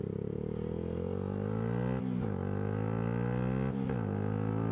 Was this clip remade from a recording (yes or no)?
no